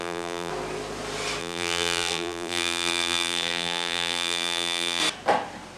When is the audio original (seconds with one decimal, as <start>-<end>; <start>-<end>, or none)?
0.5-1.4; 5.0-5.8